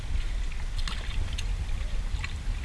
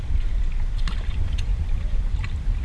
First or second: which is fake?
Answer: second